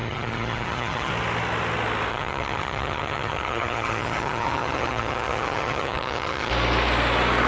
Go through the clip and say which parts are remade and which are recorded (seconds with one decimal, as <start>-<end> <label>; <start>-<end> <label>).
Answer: 0.0-1.1 remade; 1.1-2.1 recorded; 2.1-6.5 remade; 6.5-7.5 recorded